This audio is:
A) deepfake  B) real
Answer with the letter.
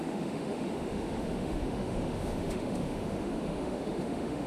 A